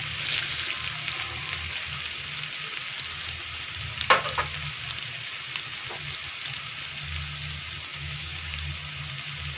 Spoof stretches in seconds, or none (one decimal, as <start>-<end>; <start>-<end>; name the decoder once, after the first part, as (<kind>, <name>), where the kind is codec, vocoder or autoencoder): 7.9-8.5 (autoencoder, DAC-VAE)